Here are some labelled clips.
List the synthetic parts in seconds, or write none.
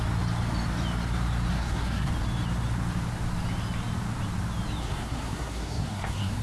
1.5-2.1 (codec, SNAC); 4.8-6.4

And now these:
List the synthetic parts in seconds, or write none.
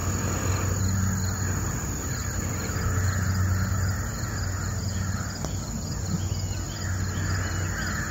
none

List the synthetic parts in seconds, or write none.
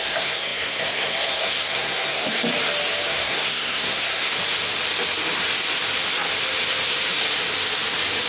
0.0-2.4 (codec, SNAC); 3.1-4.3